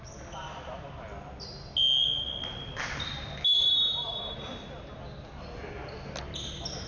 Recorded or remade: recorded